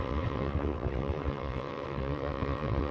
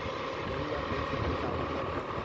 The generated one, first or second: first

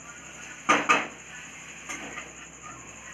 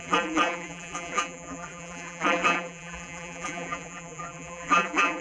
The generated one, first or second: second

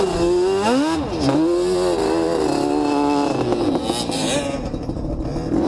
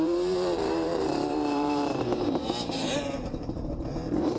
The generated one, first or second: second